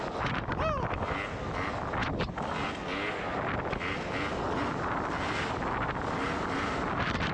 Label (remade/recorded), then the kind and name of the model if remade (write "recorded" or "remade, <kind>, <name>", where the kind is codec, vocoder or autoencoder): recorded